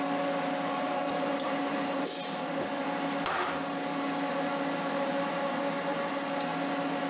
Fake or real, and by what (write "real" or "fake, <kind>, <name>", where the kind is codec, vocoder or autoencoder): real